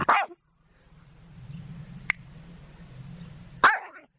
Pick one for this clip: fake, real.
real